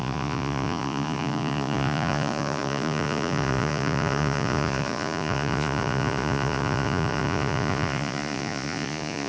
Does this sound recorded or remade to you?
remade